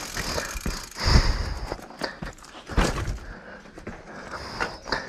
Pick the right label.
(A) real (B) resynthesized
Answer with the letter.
A